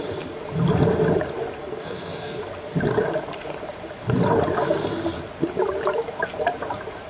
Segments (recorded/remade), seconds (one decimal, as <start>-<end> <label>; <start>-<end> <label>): 0.0-1.6 recorded; 1.6-2.4 remade; 2.4-7.1 recorded